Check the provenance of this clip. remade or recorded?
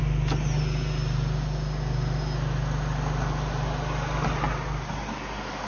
recorded